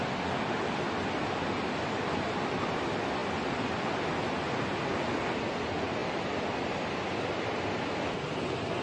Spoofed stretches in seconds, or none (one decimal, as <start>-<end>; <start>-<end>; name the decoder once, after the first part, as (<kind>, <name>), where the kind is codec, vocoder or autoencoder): none